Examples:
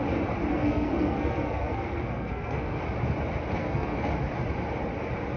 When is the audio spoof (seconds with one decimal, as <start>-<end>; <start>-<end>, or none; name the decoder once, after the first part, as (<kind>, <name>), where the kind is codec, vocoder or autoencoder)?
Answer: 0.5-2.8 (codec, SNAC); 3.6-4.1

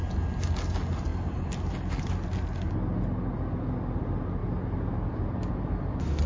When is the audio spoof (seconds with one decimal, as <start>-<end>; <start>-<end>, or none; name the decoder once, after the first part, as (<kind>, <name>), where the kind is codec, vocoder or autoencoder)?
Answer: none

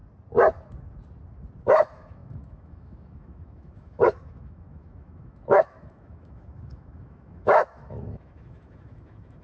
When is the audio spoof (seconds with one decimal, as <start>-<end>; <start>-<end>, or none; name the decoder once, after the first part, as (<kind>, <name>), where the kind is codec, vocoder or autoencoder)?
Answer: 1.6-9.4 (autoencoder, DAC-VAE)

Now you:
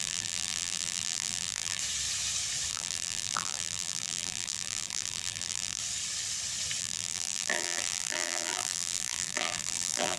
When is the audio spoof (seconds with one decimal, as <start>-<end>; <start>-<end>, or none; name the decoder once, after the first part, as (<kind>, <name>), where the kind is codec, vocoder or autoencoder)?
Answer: 0.0-1.8 (vocoder, BigVGAN v2); 2.7-5.8; 6.8-10.2

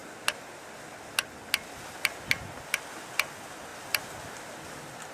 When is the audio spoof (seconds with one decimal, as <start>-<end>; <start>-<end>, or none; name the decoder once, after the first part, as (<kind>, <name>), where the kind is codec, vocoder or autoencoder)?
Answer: none

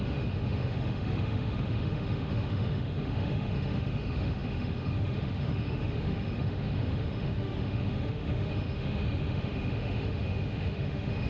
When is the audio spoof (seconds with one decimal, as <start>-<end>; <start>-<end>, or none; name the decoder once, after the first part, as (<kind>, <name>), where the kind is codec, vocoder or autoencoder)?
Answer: 0.0-11.3 (autoencoder, DAC-VAE)